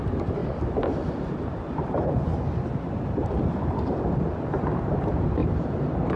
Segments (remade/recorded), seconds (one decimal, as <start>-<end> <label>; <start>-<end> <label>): 0.0-0.4 remade; 0.4-1.1 recorded; 1.1-2.3 remade; 2.3-4.5 recorded; 4.5-6.2 remade